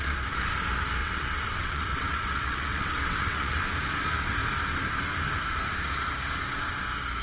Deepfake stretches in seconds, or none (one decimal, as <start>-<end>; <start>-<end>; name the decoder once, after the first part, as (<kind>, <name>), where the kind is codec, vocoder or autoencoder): 1.0-3.6 (vocoder, WaveNeXt)